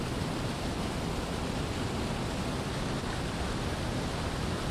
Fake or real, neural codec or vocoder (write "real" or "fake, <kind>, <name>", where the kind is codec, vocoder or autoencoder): real